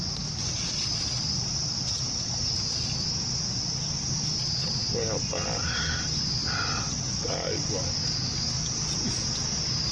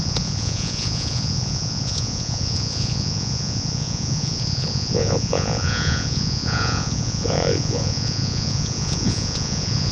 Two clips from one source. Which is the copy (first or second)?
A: second